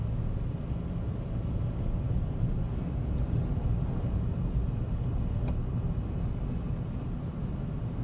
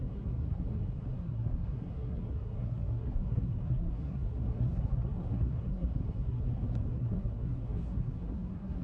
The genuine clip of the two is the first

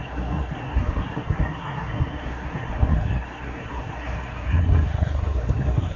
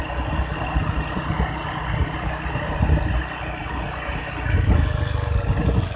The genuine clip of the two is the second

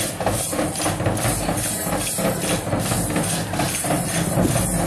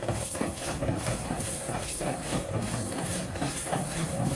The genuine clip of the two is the first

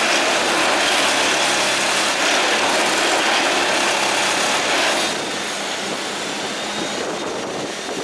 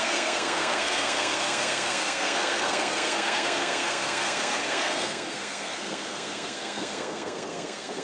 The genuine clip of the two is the first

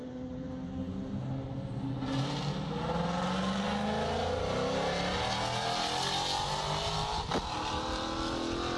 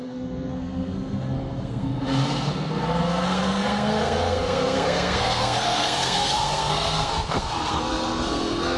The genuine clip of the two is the first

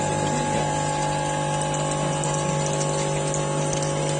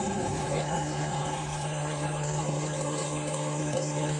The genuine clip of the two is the first